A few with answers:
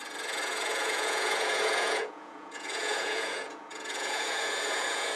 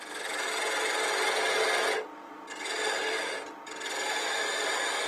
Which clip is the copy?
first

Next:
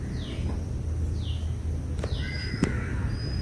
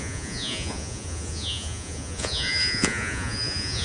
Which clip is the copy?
second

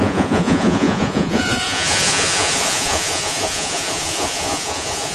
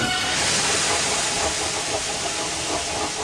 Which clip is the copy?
first